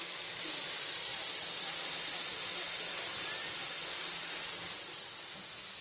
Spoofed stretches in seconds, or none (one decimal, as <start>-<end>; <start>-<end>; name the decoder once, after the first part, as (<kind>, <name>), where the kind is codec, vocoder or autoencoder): none